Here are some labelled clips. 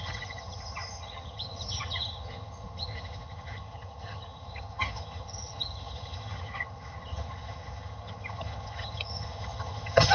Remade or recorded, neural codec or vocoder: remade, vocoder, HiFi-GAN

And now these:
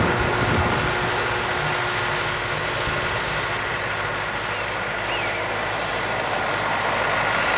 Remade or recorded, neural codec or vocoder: recorded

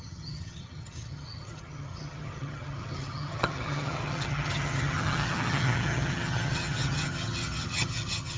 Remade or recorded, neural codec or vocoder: remade, vocoder, HiFi-GAN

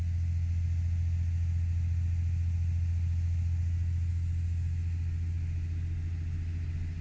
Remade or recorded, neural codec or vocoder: recorded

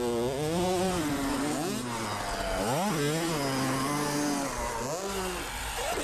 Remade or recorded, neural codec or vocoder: recorded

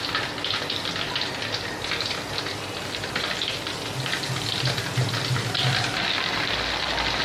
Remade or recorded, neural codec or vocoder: recorded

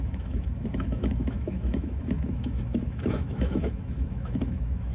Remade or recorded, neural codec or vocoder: remade, autoencoder, DAC-VAE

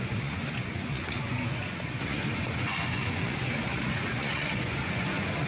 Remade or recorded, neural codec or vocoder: remade, vocoder, Vocos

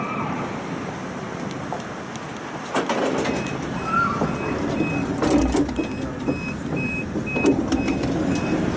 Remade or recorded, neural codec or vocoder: recorded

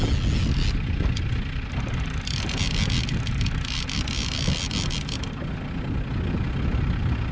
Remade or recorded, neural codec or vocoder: recorded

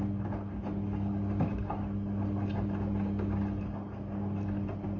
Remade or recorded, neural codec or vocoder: recorded